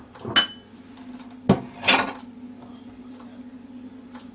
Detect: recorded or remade recorded